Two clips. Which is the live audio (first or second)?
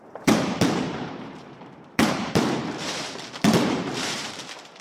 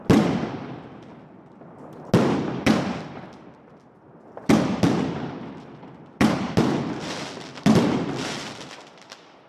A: second